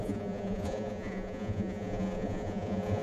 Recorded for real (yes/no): no